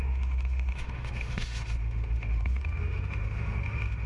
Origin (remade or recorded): remade